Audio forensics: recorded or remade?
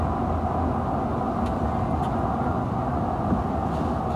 recorded